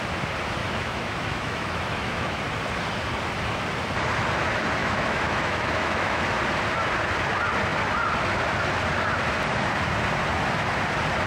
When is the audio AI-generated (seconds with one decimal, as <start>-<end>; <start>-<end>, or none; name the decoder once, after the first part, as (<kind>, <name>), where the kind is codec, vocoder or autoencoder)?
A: 0.6-2.4 (autoencoder, DAC-VAE); 4.8-6.2